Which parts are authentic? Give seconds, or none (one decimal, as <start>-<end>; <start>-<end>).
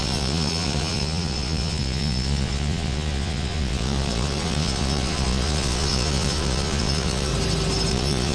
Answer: 7.3-7.9